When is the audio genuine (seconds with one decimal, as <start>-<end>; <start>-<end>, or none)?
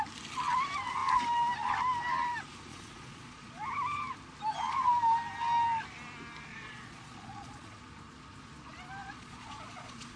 0.0-2.7; 3.6-6.5; 7.8-9.0